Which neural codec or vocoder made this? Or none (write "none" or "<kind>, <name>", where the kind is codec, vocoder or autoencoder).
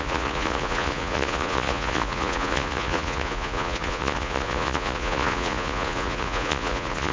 vocoder, Vocos